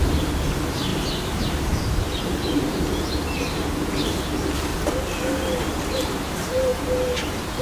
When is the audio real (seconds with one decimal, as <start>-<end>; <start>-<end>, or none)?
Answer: 4.7-5.9